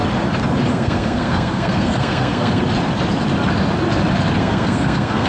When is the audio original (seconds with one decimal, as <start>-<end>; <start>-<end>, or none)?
0.0-0.7; 2.6-4.4